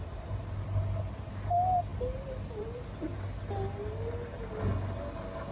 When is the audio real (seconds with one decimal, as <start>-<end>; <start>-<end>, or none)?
0.0-5.5